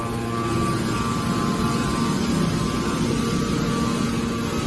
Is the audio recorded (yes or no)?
yes